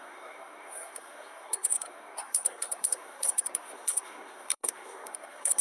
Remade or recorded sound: remade